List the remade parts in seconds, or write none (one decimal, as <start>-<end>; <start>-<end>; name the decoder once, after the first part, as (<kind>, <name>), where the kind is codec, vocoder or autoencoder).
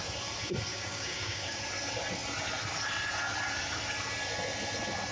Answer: 0.7-1.6 (codec, DAC)